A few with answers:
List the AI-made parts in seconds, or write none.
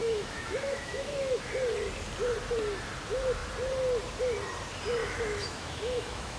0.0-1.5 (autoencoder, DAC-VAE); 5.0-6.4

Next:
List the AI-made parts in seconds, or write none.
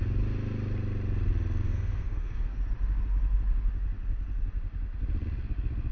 1.6-2.6 (codec, SNAC)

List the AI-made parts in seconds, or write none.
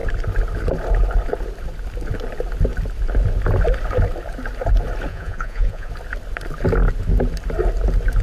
5.1-5.9 (vocoder, Vocos)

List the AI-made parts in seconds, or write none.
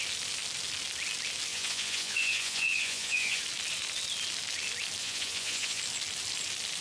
1.5-3.4 (vocoder, Vocos); 5.0-5.8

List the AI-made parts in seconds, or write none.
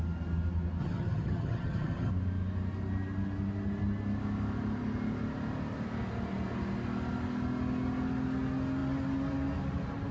0.8-2.1 (vocoder, HiFi-GAN)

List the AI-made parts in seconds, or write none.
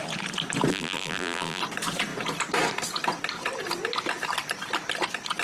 0.7-1.6 (vocoder, BigVGAN v2)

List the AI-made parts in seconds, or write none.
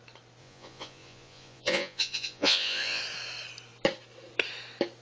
0.4-3.0 (vocoder, Vocos)